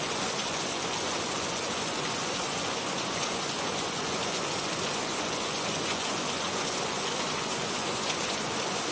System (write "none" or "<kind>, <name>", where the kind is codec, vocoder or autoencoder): vocoder, Vocos